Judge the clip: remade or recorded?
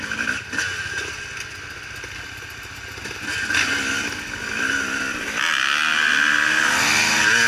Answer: recorded